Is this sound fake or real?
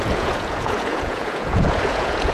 fake